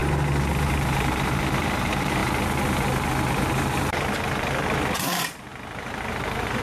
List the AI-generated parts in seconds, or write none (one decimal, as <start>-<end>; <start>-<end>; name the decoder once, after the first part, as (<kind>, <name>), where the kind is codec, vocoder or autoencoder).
0.7-2.2 (vocoder, BigVGAN v2); 3.5-5.5; 6.0-6.6